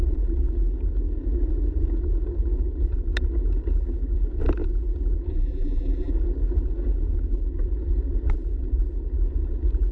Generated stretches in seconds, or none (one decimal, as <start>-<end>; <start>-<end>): 5.3-6.1